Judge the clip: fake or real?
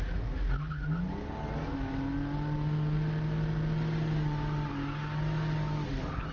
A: real